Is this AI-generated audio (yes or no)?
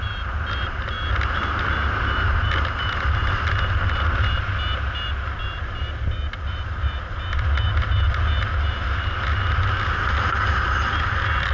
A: no